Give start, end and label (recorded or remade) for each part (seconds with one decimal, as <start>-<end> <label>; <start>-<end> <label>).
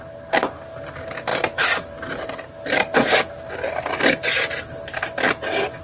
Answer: 0.0-5.8 recorded